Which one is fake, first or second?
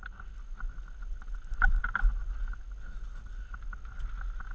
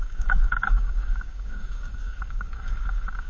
second